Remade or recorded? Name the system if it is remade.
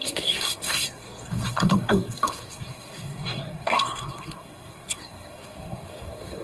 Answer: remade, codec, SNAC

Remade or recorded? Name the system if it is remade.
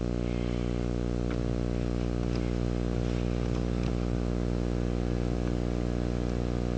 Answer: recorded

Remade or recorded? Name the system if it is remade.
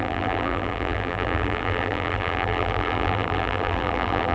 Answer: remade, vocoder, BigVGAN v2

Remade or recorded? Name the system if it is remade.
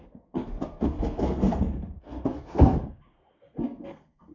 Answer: remade, codec, SNAC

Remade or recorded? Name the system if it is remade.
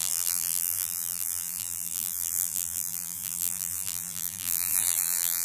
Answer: remade, vocoder, BigVGAN v2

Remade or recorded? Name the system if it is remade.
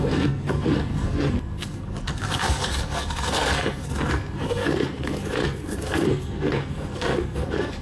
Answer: remade, codec, SNAC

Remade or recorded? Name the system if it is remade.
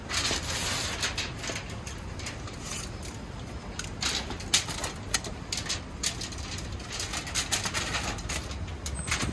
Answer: recorded